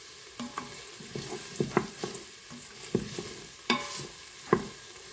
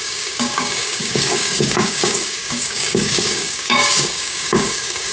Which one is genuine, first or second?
first